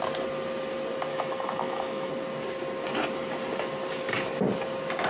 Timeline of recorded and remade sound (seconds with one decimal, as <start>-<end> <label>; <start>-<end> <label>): 0.0-1.1 recorded; 1.1-2.1 remade; 2.1-5.1 recorded